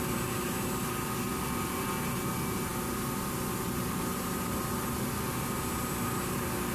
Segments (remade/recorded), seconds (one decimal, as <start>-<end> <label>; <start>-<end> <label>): 0.0-6.7 recorded